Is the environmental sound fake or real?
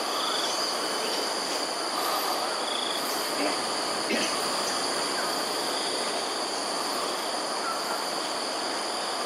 real